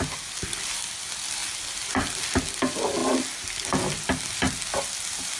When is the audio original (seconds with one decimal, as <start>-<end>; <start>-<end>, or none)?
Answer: 0.0-5.4